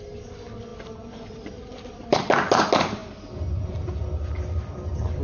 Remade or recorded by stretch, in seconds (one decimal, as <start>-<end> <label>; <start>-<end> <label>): 0.0-0.7 recorded; 0.7-2.2 remade; 2.2-5.2 recorded